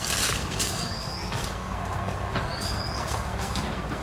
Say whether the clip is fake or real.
fake